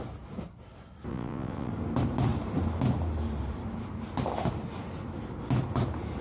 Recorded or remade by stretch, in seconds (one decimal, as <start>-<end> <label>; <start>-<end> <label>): 0.0-1.1 recorded; 1.1-1.7 remade; 1.7-6.2 recorded